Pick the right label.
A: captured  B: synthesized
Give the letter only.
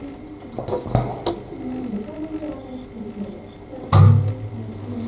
A